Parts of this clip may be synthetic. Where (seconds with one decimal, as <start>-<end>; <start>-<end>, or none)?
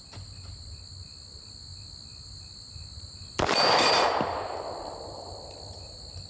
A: none